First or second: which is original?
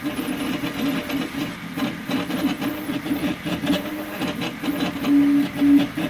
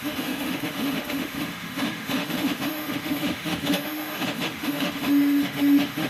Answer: first